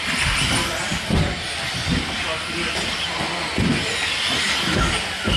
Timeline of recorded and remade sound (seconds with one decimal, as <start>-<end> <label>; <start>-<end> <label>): 0.0-5.4 recorded